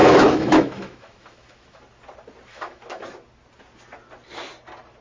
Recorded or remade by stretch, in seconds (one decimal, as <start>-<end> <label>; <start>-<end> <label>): 0.0-1.8 remade; 1.8-2.5 recorded; 2.5-3.0 remade; 3.0-5.0 recorded